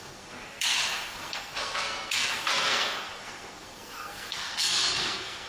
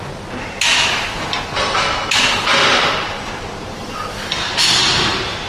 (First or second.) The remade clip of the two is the first